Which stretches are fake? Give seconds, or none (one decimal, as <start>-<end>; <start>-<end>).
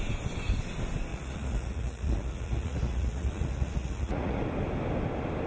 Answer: 1.1-4.4